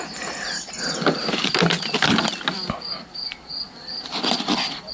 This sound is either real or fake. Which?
real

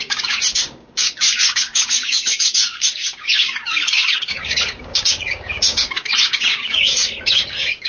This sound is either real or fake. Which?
fake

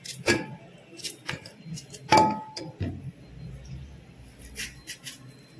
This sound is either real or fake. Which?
real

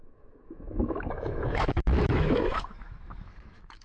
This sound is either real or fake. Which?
fake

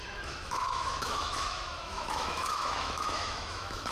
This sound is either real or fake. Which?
fake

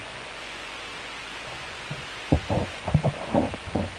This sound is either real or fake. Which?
fake